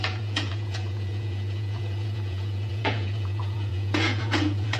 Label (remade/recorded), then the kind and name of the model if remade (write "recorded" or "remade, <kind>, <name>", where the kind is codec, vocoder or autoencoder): remade, vocoder, Vocos